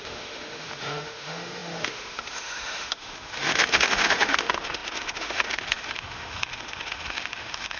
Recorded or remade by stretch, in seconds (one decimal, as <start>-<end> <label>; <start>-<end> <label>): 0.0-7.8 remade